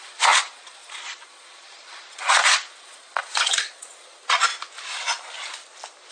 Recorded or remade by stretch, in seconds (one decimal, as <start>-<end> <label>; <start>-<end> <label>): 0.0-4.5 remade; 4.5-6.1 recorded